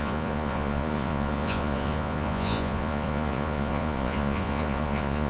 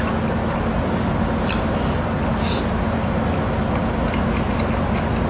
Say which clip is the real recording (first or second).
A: second